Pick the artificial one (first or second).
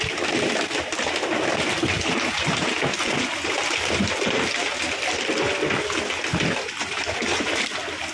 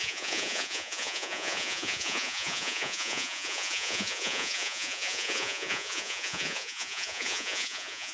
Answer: second